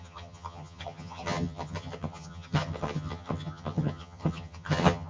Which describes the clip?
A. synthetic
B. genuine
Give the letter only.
A